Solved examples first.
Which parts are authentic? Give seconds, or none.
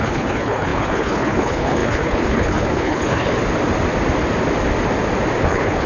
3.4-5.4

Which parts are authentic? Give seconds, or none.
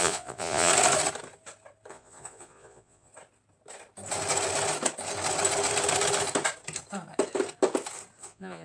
0.7-1.9; 3.1-8.2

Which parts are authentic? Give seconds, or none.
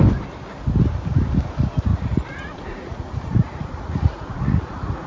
0.0-1.9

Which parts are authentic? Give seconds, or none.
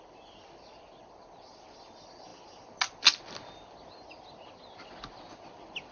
0.0-5.9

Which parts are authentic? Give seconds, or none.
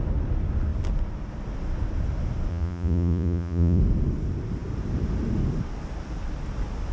0.0-2.5; 3.8-6.9